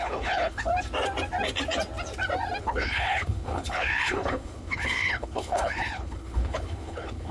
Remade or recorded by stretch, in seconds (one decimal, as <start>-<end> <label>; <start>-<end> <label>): 0.0-0.7 remade; 0.7-2.6 recorded; 2.6-7.3 remade